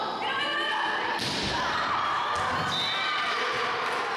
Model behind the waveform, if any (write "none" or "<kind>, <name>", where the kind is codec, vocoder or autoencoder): none